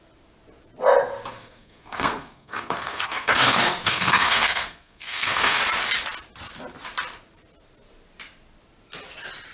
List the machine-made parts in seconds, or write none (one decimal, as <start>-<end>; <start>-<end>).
1.3-5.6